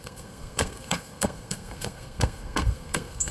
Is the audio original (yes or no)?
no